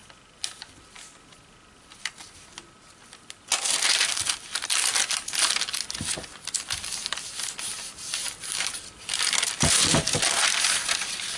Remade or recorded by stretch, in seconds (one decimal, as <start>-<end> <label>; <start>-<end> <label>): 0.0-11.4 recorded